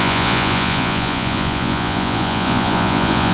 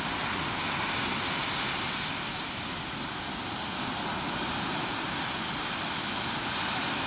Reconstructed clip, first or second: first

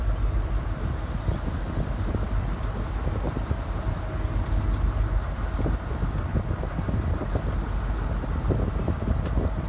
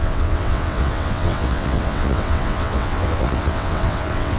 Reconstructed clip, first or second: second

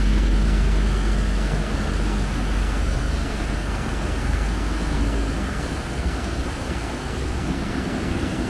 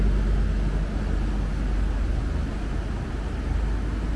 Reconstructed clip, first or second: first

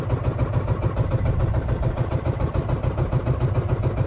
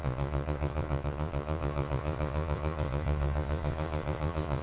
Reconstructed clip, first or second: second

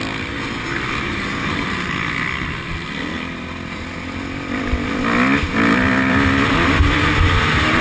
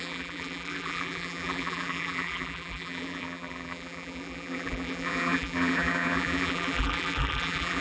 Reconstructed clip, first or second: second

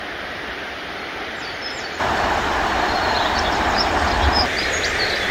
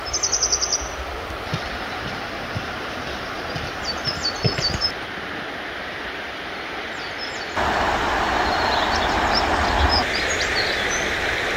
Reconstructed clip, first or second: first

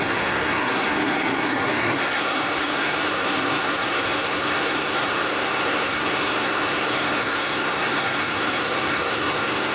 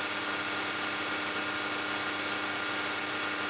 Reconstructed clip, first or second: first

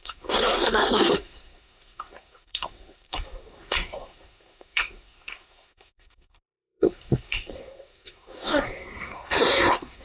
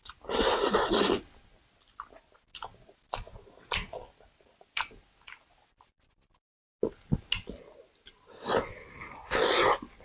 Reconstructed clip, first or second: first